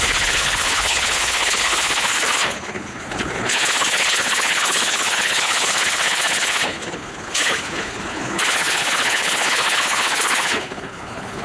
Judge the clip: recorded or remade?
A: remade